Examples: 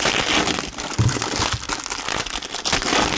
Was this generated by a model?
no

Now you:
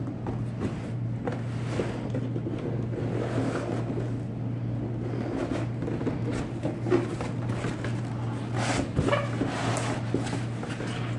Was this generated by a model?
no